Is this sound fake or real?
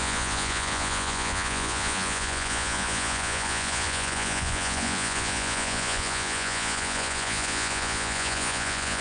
fake